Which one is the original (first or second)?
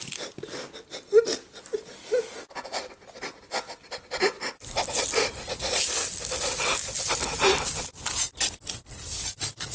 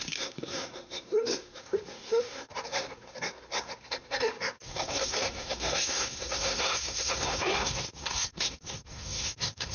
first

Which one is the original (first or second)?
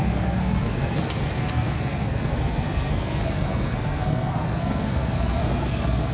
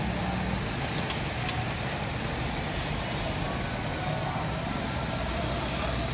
second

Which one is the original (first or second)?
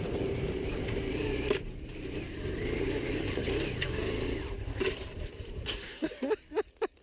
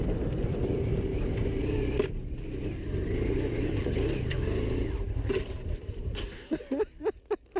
second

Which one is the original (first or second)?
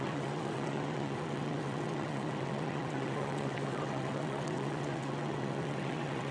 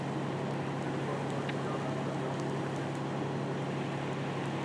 second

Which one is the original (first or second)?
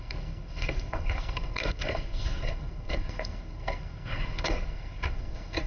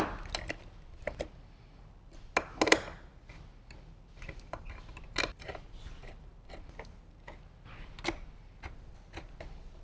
second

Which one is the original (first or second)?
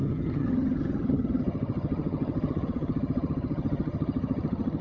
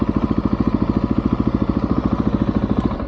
second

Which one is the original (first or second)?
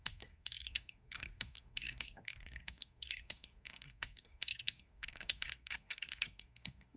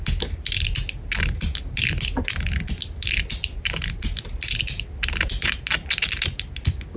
second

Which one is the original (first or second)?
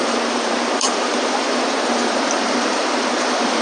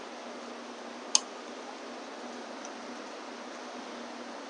second